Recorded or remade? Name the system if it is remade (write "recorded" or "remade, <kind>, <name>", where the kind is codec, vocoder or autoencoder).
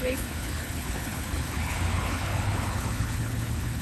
remade, codec, HILCodec